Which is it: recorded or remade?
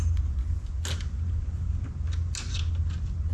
recorded